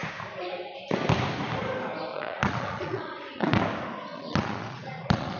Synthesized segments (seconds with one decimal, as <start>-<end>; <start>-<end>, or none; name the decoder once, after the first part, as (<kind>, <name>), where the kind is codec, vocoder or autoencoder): 2.1-3.6 (vocoder, Vocos); 4.1-5.4